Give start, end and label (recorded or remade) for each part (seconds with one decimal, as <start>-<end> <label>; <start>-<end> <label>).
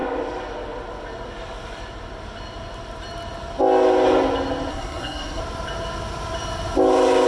0.0-4.7 recorded; 4.7-5.4 remade; 5.4-7.3 recorded